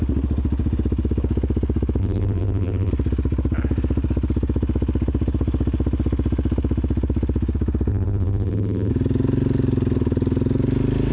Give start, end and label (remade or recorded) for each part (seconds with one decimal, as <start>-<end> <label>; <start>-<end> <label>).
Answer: 0.0-2.0 recorded; 2.0-2.9 remade; 2.9-7.9 recorded; 7.9-8.9 remade; 8.9-11.1 recorded